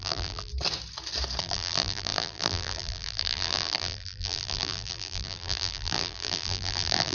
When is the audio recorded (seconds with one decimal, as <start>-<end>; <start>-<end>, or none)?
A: 0.5-1.4